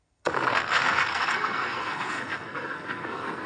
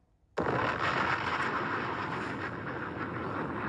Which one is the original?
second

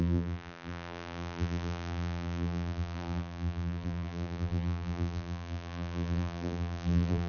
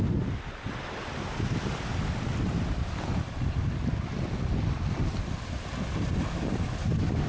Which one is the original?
second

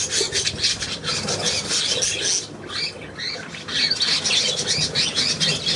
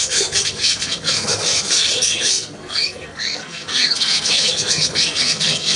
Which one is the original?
first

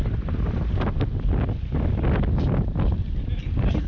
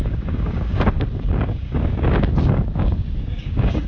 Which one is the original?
first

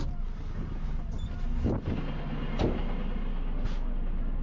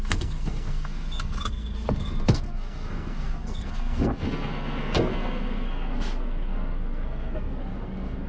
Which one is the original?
first